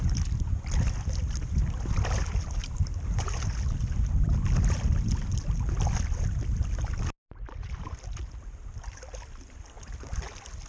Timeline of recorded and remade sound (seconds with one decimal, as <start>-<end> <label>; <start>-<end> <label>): 0.0-2.6 recorded; 2.6-3.2 remade; 3.2-10.7 recorded